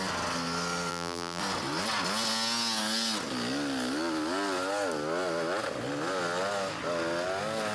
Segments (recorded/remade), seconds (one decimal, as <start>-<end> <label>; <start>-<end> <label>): 0.0-0.9 recorded; 0.9-1.4 remade; 1.4-7.7 recorded